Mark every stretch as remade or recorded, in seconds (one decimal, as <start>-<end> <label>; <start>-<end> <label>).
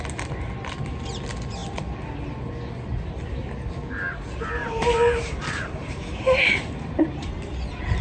0.0-4.6 recorded; 4.6-7.3 remade; 7.3-8.0 recorded